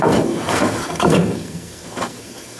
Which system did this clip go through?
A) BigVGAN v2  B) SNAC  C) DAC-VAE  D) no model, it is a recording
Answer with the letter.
B